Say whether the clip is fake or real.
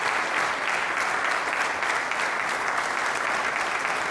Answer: real